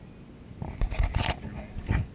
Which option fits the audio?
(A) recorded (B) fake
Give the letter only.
A